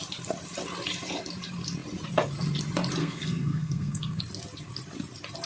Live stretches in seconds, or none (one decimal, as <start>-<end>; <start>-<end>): 0.0-3.0; 4.2-5.5